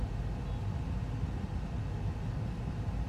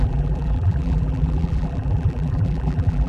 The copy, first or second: second